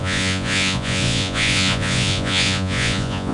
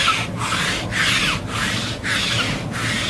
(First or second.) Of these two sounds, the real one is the second